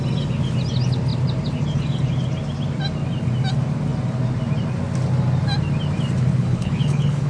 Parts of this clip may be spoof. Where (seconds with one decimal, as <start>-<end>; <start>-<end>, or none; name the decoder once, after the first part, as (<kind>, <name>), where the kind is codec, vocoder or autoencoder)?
6.3-7.3 (codec, HILCodec)